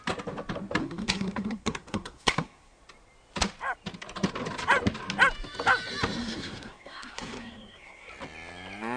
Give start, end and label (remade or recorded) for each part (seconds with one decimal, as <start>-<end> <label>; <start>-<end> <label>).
0.0-0.8 recorded; 0.8-2.8 remade; 2.8-6.2 recorded; 6.2-8.1 remade; 8.1-9.0 recorded